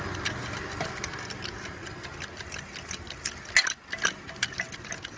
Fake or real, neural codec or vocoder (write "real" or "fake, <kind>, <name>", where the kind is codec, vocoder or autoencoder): real